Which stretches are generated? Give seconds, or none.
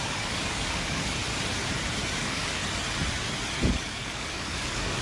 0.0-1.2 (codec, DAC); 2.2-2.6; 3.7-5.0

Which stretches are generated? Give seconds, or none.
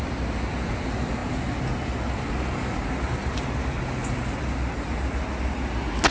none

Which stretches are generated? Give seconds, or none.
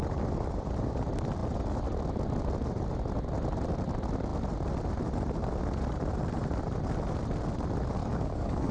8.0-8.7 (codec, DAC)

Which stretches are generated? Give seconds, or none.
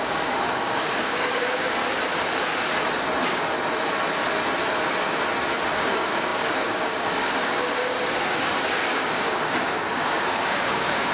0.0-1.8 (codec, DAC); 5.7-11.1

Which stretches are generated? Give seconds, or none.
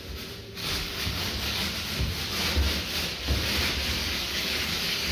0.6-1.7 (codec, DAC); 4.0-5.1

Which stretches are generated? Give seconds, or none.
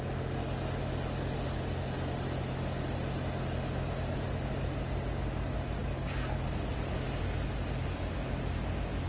5.8-6.7 (codec, DAC)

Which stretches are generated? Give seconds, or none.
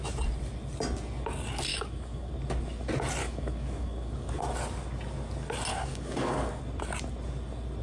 1.7-2.3 (codec, DAC); 3.2-4.4; 5.7-6.6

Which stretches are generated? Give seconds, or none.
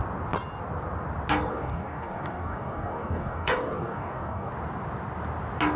1.5-4.5 (codec, DAC)